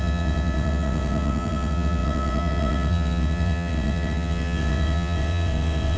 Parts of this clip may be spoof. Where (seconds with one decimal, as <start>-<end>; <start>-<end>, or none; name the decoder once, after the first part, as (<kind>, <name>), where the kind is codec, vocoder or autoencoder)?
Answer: 0.0-6.0 (vocoder, WaveNeXt)